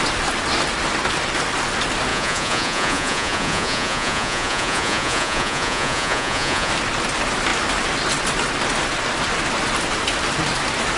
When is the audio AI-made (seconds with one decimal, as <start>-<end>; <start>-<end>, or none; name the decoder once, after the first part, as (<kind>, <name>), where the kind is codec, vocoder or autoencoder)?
2.1-6.7 (vocoder, Vocos)